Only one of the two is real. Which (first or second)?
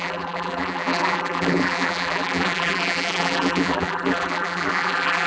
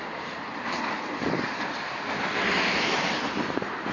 second